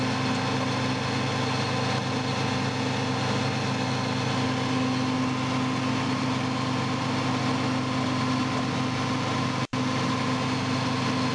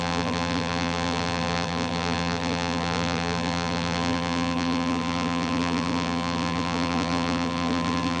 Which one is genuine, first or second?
first